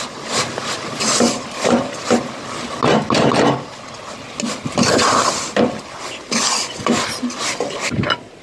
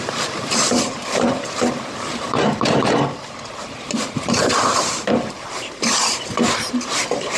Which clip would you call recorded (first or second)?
first